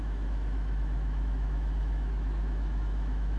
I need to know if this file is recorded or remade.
remade